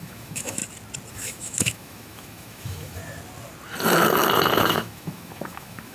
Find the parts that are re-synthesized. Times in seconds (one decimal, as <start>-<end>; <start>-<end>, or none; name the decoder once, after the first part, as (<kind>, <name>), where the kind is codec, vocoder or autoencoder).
0.0-0.6 (autoencoder, DAC-VAE); 1.1-3.0; 4.5-5.9